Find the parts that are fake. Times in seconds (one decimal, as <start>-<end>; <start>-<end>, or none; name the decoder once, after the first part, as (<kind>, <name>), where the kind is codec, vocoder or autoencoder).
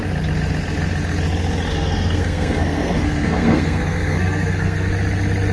1.7-4.9 (codec, SNAC)